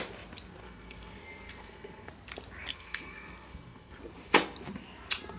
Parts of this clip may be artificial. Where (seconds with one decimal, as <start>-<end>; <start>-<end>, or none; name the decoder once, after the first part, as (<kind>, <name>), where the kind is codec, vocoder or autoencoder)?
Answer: 0.6-2.1 (codec, SNAC); 2.7-4.0